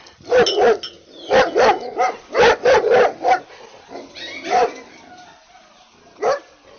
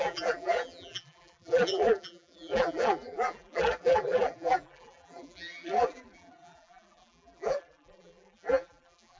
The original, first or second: first